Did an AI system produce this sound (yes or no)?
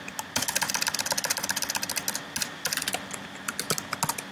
no